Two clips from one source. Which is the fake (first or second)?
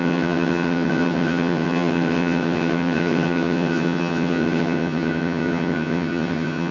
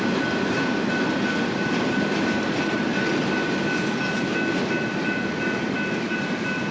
first